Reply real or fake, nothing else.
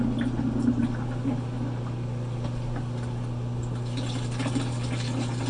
real